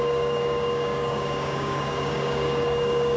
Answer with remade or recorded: remade